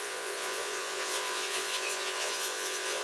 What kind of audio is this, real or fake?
fake